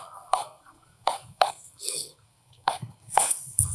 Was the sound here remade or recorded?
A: remade